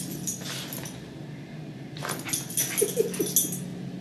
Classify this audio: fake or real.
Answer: real